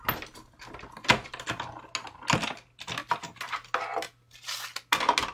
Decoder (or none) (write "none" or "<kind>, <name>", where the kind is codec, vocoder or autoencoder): none